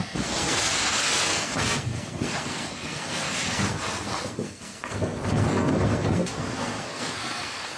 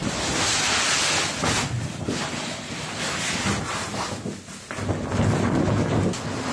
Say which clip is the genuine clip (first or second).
second